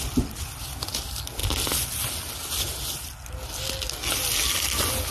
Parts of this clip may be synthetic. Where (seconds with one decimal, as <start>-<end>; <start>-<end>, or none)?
none